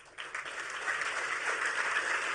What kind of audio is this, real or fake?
real